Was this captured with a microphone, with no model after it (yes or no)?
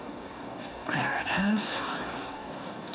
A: no